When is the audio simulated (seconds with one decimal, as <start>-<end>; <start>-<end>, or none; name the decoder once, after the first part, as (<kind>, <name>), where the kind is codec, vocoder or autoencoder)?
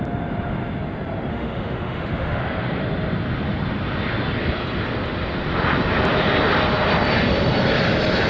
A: 1.3-2.4 (autoencoder, DAC-VAE)